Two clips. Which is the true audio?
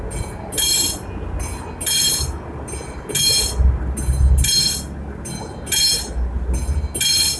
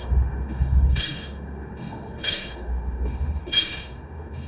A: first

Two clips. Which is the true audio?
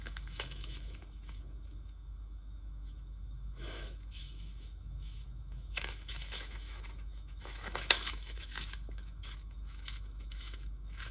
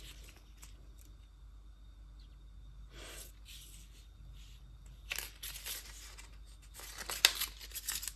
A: second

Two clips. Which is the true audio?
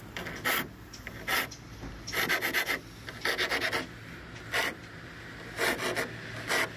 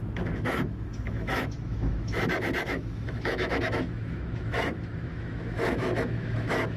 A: first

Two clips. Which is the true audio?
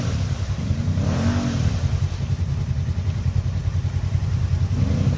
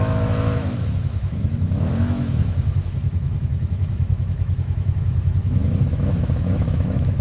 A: first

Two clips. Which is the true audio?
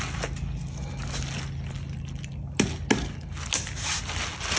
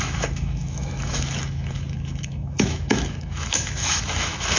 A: first